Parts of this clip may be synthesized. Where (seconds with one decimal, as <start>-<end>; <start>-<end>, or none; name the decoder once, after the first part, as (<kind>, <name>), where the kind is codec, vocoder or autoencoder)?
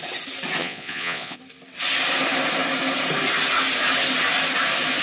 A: 0.6-1.4 (vocoder, Vocos)